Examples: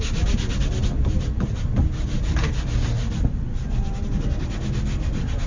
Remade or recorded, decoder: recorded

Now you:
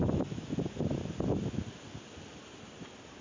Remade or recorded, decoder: recorded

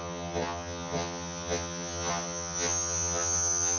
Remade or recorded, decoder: remade, vocoder, HiFi-GAN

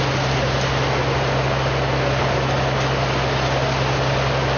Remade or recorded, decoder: recorded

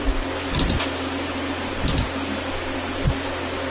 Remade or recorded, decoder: recorded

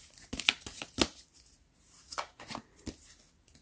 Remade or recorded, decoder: recorded